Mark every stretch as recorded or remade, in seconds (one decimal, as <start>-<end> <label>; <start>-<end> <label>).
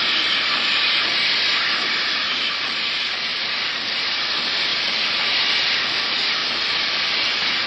0.0-2.2 remade; 2.2-3.3 recorded; 3.3-4.0 remade; 4.0-4.7 recorded; 4.7-5.8 remade; 5.8-7.7 recorded